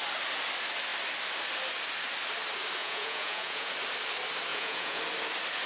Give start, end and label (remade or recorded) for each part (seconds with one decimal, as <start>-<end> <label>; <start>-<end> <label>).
0.0-2.8 recorded; 2.8-3.7 remade; 3.7-4.5 recorded; 4.5-5.0 remade; 5.0-5.7 recorded